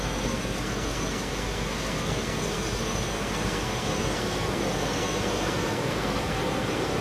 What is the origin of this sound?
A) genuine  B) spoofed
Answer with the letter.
B